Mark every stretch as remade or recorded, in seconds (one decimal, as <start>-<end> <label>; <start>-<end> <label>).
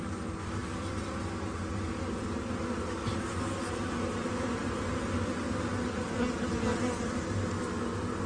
0.0-8.3 recorded